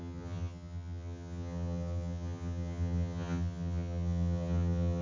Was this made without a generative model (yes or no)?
no